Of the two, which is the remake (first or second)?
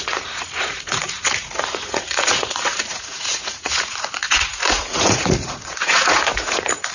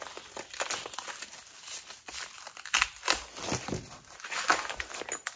first